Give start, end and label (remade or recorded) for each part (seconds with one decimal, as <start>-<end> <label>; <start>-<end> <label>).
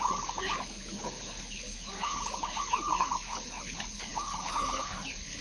0.0-5.4 remade